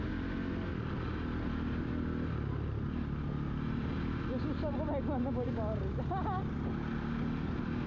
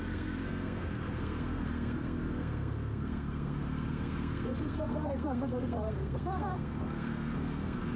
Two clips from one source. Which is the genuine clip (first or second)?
first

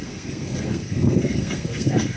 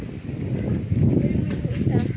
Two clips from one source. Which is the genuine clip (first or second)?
second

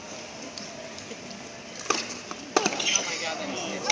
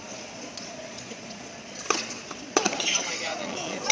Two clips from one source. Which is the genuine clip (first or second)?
first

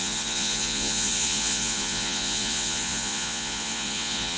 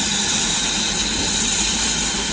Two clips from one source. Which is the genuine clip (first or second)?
second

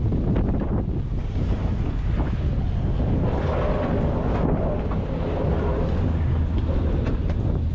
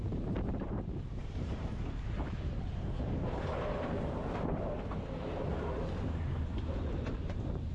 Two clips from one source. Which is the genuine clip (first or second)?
first